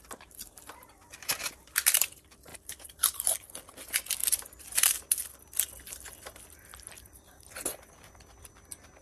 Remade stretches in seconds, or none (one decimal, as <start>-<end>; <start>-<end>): 2.5-3.0; 4.2-5.4; 6.7-7.9

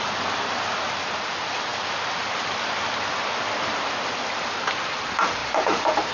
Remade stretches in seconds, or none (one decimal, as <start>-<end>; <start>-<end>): 5.4-6.1

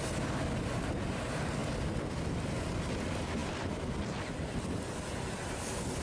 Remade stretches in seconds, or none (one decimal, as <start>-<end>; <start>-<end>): none

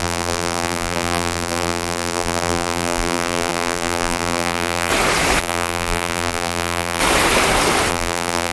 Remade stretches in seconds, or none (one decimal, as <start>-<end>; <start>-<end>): 0.0-4.9; 5.4-7.0; 7.9-8.5